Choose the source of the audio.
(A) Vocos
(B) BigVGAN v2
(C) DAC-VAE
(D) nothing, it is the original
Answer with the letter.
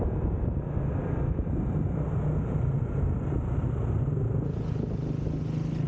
D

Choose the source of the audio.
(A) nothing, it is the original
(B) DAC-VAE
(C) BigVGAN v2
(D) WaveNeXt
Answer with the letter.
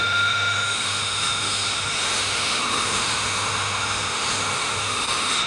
B